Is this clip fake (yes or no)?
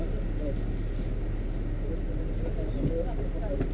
no